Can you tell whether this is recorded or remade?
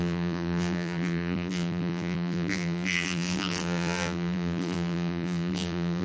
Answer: remade